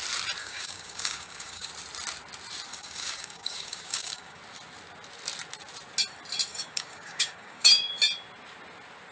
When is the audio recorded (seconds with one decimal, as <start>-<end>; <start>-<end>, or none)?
0.0-0.4; 1.7-2.7; 4.4-6.5; 7.9-9.1